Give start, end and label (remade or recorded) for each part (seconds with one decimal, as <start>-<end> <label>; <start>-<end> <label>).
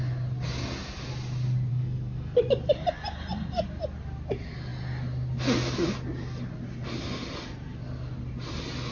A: 0.0-1.7 recorded; 1.7-2.4 remade; 2.4-8.9 recorded